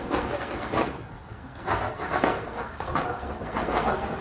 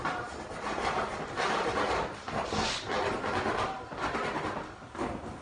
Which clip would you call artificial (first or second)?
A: first